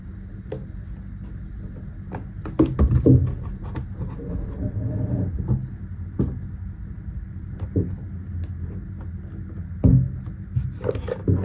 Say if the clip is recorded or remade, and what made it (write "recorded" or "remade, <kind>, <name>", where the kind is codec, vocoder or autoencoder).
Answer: recorded